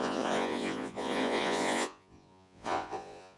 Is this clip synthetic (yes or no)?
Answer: yes